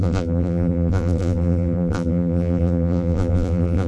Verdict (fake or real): fake